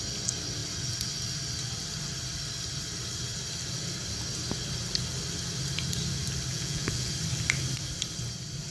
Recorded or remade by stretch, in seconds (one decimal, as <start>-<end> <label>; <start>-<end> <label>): 0.0-6.5 recorded; 6.5-7.1 remade; 7.1-8.7 recorded